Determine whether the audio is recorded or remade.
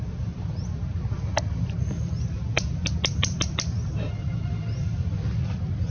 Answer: recorded